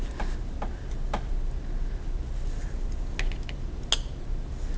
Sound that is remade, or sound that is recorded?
recorded